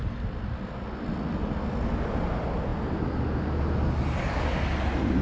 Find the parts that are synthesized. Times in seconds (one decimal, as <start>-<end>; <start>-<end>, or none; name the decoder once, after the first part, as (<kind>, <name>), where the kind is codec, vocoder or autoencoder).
none